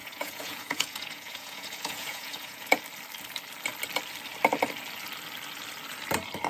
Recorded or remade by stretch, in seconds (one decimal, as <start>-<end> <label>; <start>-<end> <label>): 0.0-2.8 remade; 2.8-6.5 recorded